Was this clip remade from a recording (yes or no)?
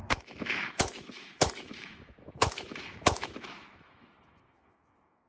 yes